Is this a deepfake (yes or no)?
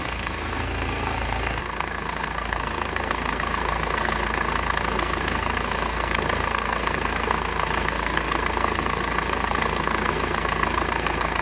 yes